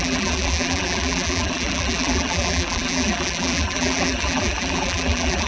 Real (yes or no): no